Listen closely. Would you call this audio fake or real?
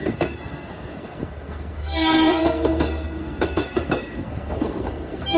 fake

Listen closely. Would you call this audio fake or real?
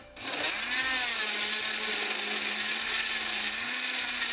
real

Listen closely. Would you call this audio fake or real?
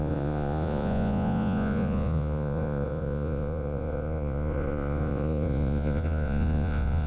fake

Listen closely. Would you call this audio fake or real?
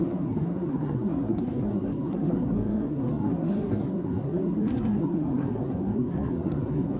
fake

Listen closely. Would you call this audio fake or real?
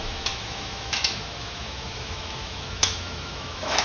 fake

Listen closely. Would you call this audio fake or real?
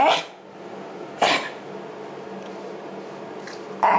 real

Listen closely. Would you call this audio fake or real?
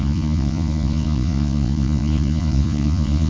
fake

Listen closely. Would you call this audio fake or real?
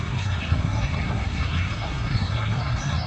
fake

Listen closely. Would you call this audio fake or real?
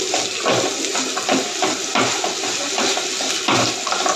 real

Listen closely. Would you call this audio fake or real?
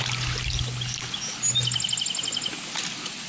real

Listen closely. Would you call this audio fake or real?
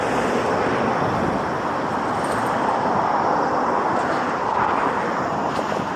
real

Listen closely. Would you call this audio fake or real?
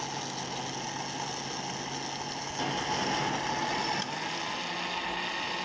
real